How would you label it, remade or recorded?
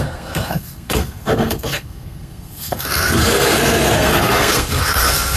remade